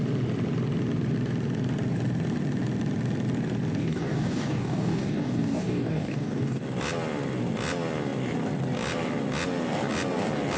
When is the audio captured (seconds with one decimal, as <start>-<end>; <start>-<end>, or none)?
0.0-3.8; 6.6-10.6